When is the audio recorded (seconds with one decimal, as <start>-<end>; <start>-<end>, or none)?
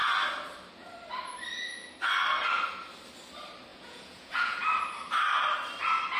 0.0-3.7; 4.6-6.2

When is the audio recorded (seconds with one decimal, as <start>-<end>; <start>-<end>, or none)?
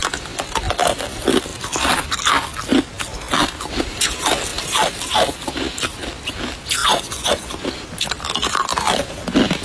0.0-6.8; 7.5-9.6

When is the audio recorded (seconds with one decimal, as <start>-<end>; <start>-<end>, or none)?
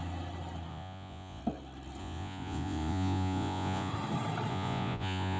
0.0-0.7; 1.4-2.0; 3.9-4.5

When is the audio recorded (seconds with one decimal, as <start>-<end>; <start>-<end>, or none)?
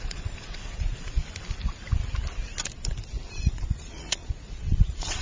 1.2-3.5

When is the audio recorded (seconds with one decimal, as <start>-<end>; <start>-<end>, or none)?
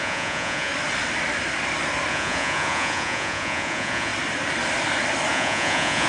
0.7-2.1; 4.1-5.3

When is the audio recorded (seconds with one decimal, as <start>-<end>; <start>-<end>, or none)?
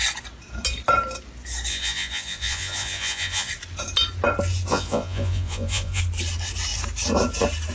0.0-1.7; 3.5-4.7; 6.0-7.7